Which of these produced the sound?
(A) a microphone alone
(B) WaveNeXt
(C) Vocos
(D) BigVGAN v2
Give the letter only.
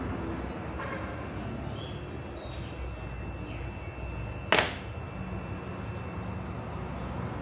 A